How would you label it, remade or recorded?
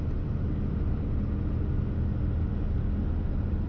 recorded